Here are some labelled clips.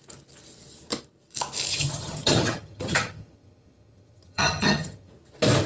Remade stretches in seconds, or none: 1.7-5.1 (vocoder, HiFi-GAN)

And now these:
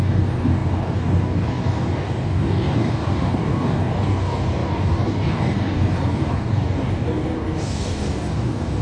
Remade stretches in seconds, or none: 0.0-8.8 (codec, DAC)

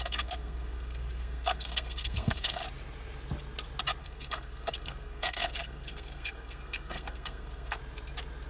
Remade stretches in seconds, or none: 0.0-2.6 (codec, SNAC); 4.0-7.8

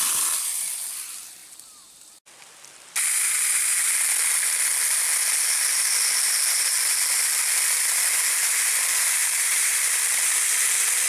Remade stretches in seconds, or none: 1.4-3.9 (vocoder, BigVGAN v2); 9.2-10.2

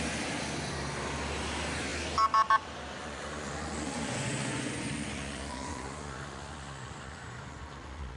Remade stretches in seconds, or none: 3.0-8.2 (vocoder, Vocos)

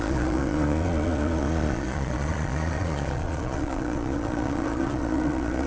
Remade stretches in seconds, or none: 0.0-5.7 (vocoder, Vocos)

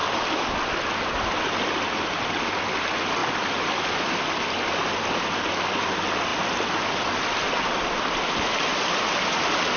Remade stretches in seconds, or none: 3.2-4.2 (vocoder, BigVGAN v2); 6.3-9.3